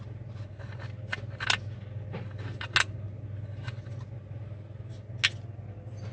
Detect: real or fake real